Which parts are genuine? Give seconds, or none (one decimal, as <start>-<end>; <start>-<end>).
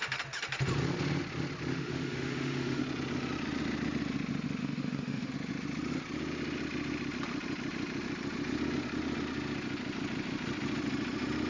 0.0-1.7; 2.8-4.6; 5.3-11.5